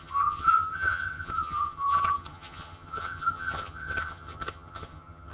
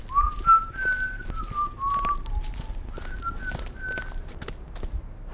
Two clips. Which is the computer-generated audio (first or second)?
first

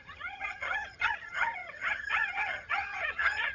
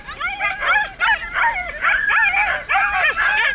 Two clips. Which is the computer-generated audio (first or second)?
first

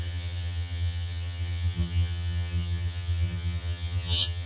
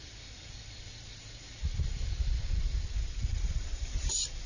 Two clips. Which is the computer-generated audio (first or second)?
first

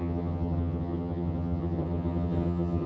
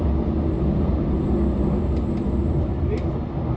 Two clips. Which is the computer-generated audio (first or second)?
first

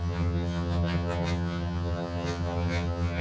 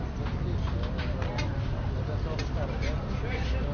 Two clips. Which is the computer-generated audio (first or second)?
first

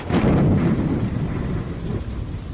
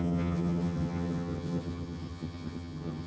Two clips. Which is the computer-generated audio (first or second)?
second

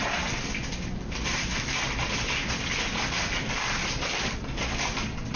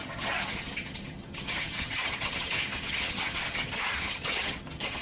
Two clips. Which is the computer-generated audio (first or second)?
second